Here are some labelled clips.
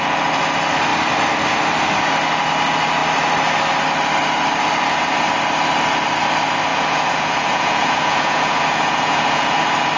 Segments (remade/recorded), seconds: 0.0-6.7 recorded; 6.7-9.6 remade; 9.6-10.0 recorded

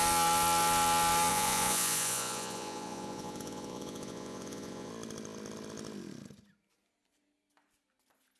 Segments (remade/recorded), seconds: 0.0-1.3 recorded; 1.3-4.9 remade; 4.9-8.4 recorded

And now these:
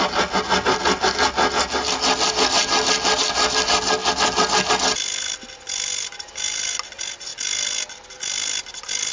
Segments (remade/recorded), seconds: 0.0-9.1 recorded

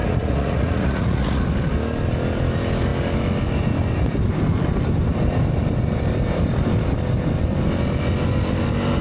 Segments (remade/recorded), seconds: 0.0-1.4 remade; 1.4-9.0 recorded

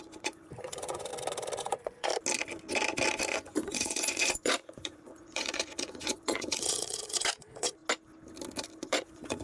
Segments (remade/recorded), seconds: 0.0-1.1 remade; 1.1-1.6 recorded; 1.6-2.1 remade; 2.1-3.3 recorded; 3.3-7.8 remade; 7.8-8.8 recorded; 8.8-9.4 remade

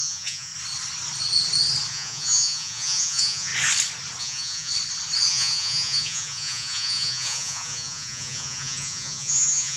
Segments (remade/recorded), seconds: 0.0-0.5 remade; 0.5-1.9 recorded; 1.9-3.5 remade; 3.5-4.2 recorded; 4.2-4.7 remade; 4.7-5.3 recorded; 5.3-9.8 remade

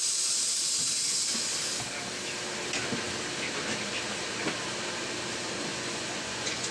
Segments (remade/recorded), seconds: 0.0-5.7 recorded; 5.7-6.7 remade